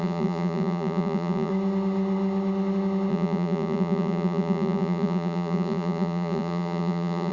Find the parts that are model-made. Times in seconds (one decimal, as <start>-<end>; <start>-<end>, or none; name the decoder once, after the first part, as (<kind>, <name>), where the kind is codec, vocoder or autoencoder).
0.0-1.5 (vocoder, Vocos); 3.1-7.3